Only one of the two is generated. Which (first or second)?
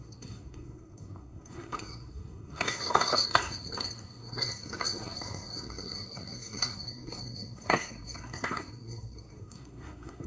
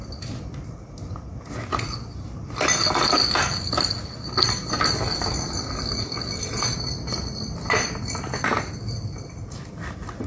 first